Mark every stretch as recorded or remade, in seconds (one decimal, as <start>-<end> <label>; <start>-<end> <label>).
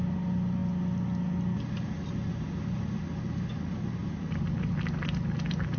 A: 0.0-4.0 recorded; 4.0-4.8 remade; 4.8-5.8 recorded